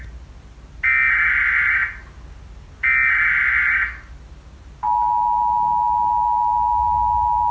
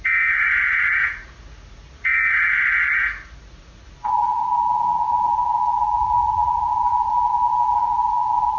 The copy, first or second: second